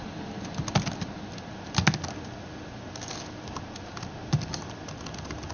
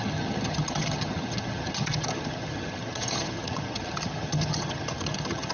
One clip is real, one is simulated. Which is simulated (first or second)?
second